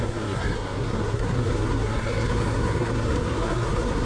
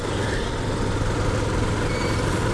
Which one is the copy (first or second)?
first